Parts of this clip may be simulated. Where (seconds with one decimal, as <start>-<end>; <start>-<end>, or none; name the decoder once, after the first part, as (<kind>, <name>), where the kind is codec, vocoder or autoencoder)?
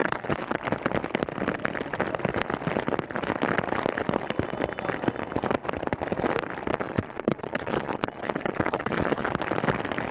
0.0-0.6 (vocoder, Vocos); 6.7-9.3